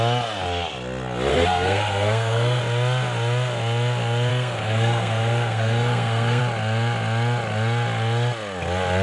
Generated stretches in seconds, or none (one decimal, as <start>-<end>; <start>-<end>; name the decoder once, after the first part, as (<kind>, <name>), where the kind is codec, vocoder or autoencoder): 1.3-2.6 (codec, SNAC); 4.3-6.4